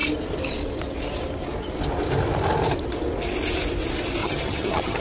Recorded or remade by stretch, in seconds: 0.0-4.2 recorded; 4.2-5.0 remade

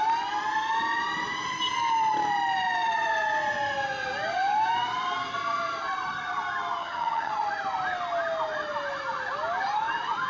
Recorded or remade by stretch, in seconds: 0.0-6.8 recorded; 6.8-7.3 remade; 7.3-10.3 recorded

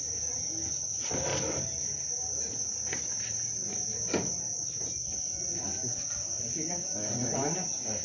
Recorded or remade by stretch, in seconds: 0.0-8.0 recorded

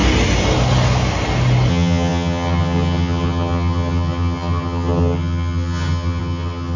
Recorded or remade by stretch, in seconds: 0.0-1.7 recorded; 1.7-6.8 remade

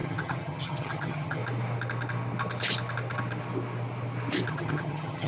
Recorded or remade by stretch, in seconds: 0.0-1.4 remade; 1.4-4.5 recorded; 4.5-5.3 remade